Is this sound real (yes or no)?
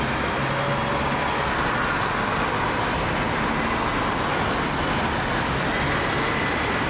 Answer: yes